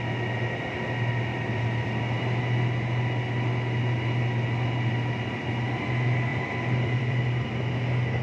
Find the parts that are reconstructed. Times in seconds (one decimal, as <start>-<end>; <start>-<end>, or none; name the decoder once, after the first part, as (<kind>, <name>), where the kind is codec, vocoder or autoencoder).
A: 1.3-2.0 (vocoder, BigVGAN v2); 6.3-7.5